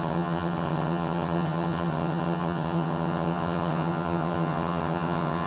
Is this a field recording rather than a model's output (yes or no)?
no